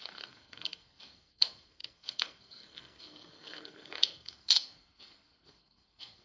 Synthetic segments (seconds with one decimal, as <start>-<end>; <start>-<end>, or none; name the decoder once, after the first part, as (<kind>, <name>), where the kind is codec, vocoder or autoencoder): 0.0-6.2 (codec, SNAC)

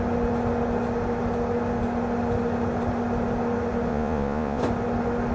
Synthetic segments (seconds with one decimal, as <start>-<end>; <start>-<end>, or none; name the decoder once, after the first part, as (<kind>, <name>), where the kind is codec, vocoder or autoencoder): 3.9-4.6 (vocoder, Vocos)

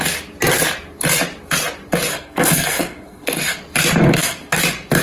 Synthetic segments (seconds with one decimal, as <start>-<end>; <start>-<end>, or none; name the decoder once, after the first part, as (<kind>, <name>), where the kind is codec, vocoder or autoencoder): 2.1-3.6 (codec, SNAC); 4.0-4.6

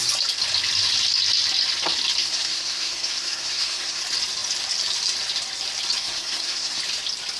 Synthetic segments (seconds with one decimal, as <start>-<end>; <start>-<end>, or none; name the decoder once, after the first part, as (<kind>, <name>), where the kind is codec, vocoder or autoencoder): 2.2-4.0 (codec, SNAC); 6.0-6.8